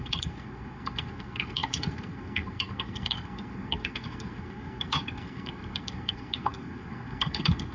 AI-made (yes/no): yes